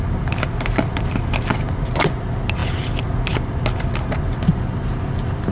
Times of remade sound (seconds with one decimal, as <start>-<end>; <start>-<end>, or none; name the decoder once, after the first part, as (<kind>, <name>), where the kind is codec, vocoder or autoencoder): none